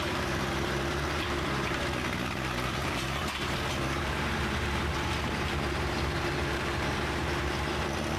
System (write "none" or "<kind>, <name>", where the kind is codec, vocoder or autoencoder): vocoder, BigVGAN v2